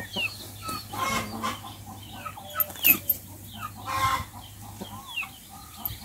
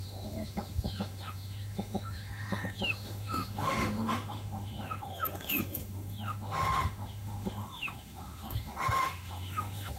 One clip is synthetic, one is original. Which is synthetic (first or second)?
second